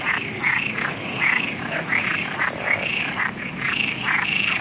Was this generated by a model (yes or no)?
no